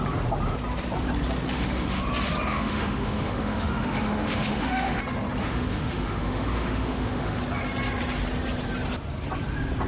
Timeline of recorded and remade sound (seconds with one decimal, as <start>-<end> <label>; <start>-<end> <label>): 0.0-1.5 recorded; 1.5-2.0 remade; 2.0-2.5 recorded; 2.5-5.0 remade; 5.0-5.4 recorded; 5.4-7.4 remade; 7.4-9.9 recorded